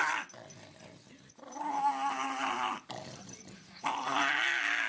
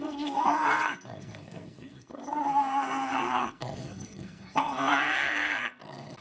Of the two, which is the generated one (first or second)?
second